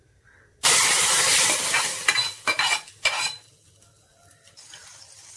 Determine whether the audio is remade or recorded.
recorded